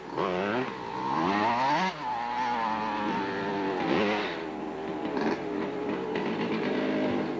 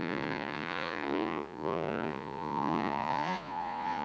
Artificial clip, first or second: second